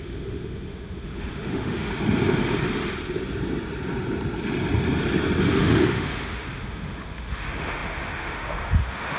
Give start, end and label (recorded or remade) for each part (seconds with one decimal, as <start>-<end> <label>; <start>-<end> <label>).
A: 0.0-1.9 remade; 1.9-5.5 recorded; 5.5-9.2 remade